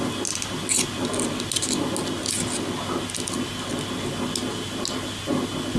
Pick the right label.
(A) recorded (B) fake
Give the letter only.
A